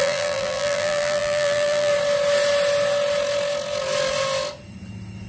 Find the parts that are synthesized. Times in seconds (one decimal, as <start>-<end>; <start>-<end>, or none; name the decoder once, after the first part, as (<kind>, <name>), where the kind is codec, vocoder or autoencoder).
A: 0.0-1.9 (vocoder, BigVGAN v2)